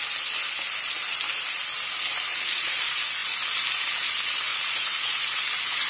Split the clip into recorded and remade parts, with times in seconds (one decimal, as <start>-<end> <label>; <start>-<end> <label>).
0.0-2.3 recorded; 2.3-2.8 remade; 2.8-4.5 recorded; 4.5-5.2 remade; 5.2-5.9 recorded